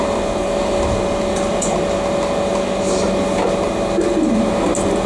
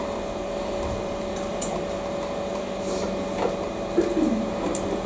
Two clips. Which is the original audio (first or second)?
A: first